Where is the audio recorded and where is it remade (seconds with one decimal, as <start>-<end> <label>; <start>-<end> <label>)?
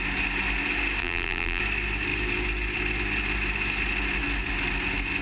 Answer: 0.0-1.0 recorded; 1.0-1.6 remade; 1.6-5.2 recorded